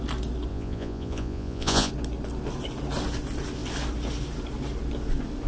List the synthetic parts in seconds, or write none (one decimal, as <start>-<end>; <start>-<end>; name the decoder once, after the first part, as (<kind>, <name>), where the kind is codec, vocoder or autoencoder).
0.5-1.9 (vocoder, Vocos)